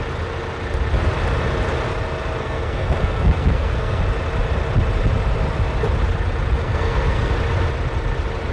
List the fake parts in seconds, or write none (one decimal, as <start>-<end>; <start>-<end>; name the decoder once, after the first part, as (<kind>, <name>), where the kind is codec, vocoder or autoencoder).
2.4-4.0 (codec, SNAC); 6.6-7.3